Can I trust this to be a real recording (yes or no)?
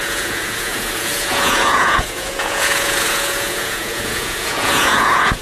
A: no